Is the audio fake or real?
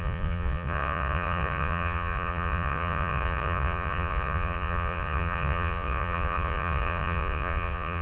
fake